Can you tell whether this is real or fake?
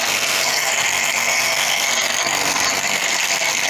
fake